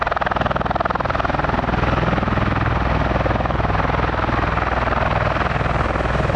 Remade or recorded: recorded